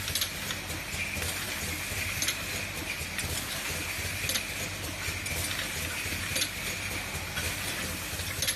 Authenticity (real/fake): real